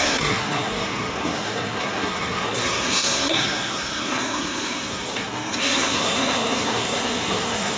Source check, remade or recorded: remade